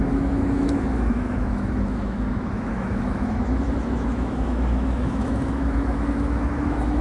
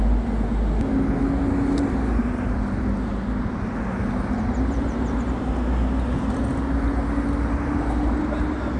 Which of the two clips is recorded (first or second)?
second